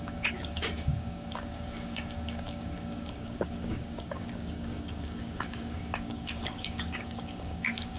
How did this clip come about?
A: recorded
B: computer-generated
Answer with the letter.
B